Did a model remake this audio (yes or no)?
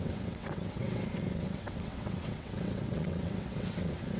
yes